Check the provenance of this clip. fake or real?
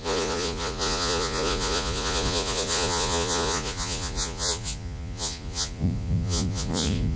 fake